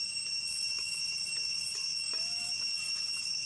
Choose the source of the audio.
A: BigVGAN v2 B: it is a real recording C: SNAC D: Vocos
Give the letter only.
B